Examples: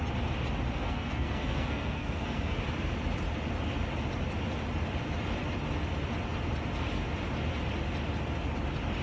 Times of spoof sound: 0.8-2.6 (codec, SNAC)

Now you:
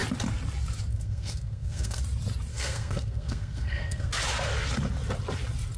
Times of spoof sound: 0.9-2.0 (codec, SNAC); 2.5-4.1

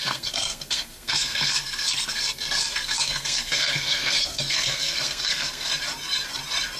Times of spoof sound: 0.0-5.7 (codec, SNAC)

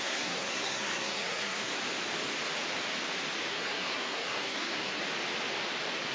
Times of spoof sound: 0.0-1.7 (codec, SNAC); 3.5-5.0

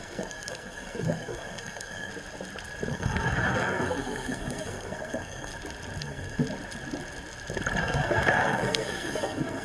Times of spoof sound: 0.0-2.1 (codec, SNAC); 2.9-5.5; 6.0-6.4; 7.8-9.6

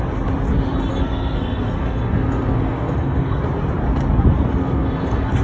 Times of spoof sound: 0.9-3.4 (codec, SNAC); 4.6-5.4